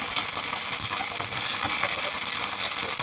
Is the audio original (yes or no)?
yes